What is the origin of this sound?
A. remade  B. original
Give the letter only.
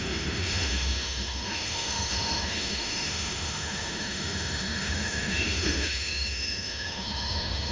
A